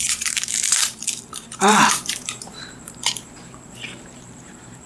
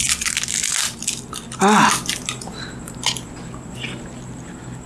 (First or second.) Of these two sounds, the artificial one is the first